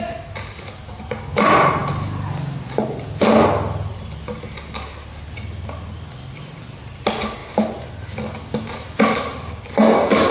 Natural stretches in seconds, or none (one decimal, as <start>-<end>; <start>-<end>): 0.0-10.3

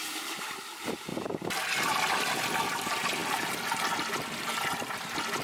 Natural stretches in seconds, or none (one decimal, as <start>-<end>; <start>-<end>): 0.0-1.1; 2.2-5.4